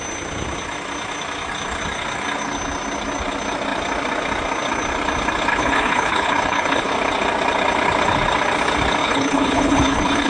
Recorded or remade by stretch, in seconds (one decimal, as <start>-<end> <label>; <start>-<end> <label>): 0.0-5.5 recorded; 5.5-6.9 remade; 6.9-9.0 recorded; 9.0-10.3 remade